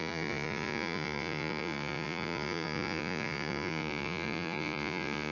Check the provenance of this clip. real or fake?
fake